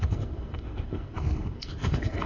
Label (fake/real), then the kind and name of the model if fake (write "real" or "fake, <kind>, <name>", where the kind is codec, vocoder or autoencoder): fake, codec, SNAC